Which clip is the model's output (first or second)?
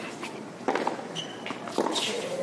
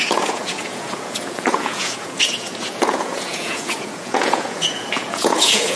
second